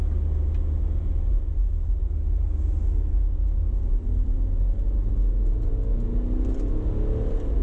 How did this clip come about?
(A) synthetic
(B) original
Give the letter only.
B